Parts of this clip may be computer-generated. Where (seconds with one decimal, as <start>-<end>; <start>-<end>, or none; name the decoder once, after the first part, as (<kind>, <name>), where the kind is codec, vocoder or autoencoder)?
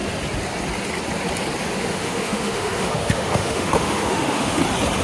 1.6-4.6 (autoencoder, DAC-VAE)